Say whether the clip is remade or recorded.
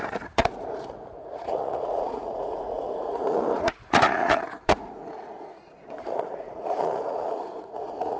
remade